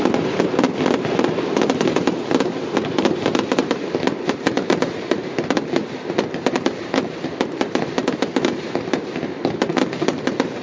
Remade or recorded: remade